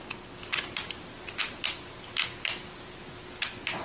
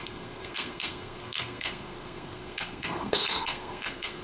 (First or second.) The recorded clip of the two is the first